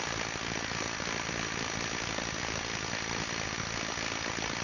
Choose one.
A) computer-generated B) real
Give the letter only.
B